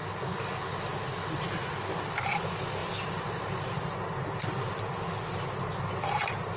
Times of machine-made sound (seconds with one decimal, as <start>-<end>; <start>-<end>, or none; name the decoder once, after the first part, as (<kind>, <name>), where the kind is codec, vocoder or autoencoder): none